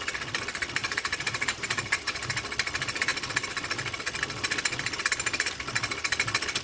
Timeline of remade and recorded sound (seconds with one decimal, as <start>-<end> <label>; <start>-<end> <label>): 0.0-0.8 recorded; 0.8-2.3 remade; 2.3-6.6 recorded